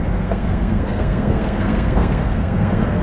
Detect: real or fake fake